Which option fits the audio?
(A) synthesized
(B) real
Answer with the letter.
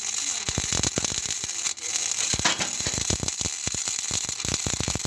B